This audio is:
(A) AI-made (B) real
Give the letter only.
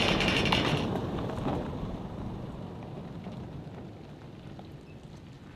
B